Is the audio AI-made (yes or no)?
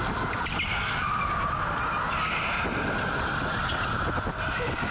no